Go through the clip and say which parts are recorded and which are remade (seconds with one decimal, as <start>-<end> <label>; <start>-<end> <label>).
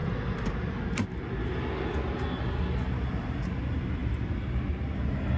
0.0-5.4 recorded